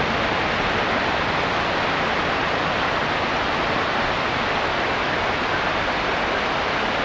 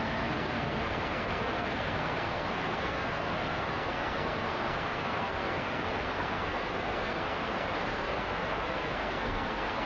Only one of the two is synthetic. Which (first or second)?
second